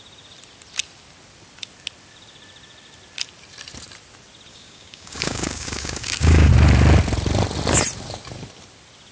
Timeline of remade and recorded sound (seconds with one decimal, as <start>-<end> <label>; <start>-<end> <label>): 0.0-4.5 recorded; 4.5-6.5 remade; 6.5-9.1 recorded